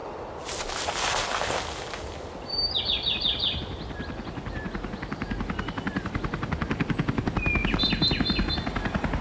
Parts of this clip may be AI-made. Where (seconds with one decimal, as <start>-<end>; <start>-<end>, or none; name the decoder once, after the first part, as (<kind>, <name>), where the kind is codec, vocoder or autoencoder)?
none